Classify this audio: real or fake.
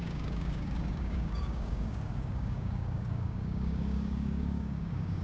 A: fake